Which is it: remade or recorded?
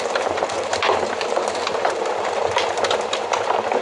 remade